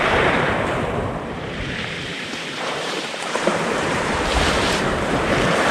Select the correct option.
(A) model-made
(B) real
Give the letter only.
A